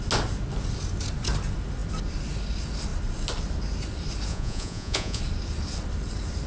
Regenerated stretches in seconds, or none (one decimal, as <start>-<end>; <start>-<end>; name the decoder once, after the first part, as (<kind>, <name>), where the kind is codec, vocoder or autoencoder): 4.3-5.2 (vocoder, Vocos)